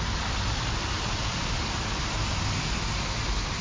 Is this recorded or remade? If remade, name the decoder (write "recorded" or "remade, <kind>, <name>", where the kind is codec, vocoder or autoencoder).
recorded